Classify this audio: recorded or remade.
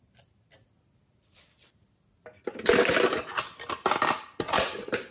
recorded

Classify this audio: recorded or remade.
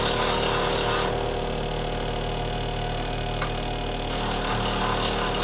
recorded